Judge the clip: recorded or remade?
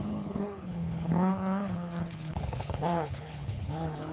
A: remade